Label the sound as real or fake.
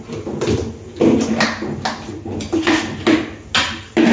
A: real